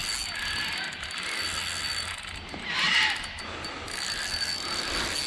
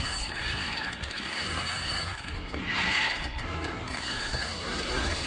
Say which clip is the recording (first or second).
first